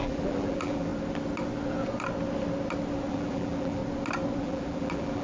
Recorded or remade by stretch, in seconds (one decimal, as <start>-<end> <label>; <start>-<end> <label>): 0.0-0.9 remade; 0.9-3.1 recorded; 3.1-3.8 remade; 3.8-4.4 recorded; 4.4-5.2 remade